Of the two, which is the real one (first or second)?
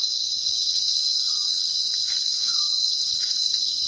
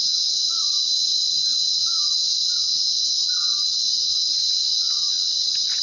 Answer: second